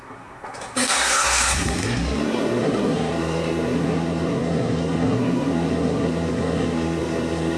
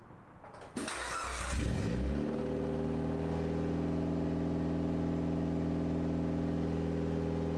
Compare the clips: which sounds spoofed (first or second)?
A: first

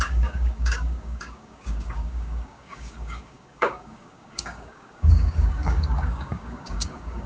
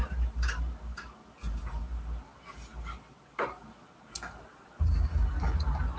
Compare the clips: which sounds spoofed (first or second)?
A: first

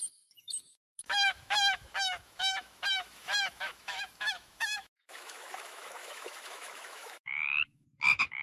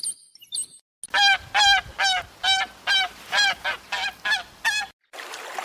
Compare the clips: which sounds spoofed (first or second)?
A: first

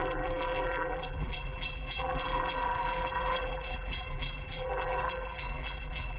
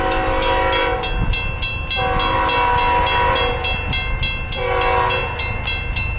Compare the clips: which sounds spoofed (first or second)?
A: first